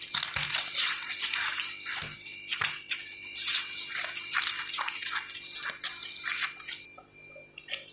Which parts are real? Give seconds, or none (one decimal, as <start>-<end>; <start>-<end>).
0.0-7.9